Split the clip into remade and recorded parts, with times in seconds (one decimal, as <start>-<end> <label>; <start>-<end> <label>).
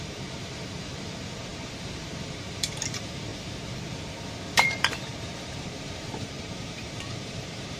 0.0-3.3 remade; 3.3-4.5 recorded; 4.5-7.8 remade